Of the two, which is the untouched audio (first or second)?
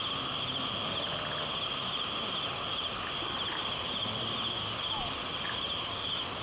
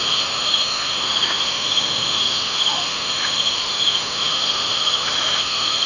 first